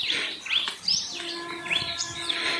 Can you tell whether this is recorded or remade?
recorded